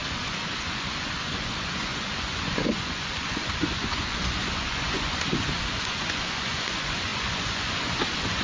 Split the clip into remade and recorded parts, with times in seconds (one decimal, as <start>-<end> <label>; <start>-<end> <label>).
0.0-8.4 remade